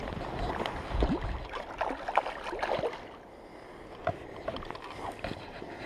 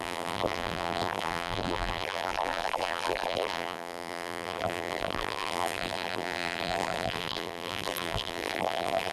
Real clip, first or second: first